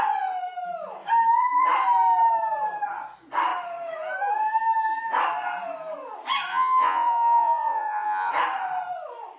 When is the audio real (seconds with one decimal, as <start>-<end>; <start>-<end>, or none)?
0.0-6.5; 8.3-9.4